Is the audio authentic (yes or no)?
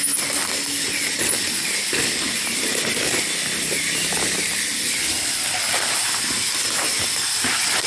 yes